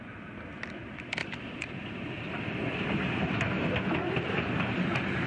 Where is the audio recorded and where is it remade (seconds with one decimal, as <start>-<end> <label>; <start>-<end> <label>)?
0.0-5.3 remade